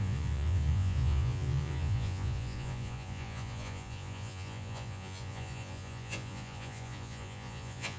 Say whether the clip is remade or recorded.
remade